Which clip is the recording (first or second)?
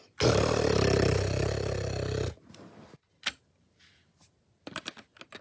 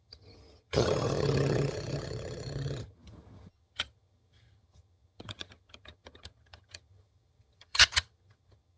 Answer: first